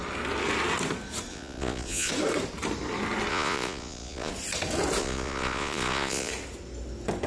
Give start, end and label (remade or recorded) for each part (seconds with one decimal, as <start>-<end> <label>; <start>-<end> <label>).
0.0-1.3 recorded; 1.3-2.1 remade; 2.1-3.3 recorded; 3.3-4.3 remade; 4.3-5.0 recorded; 5.0-6.3 remade; 6.3-7.3 recorded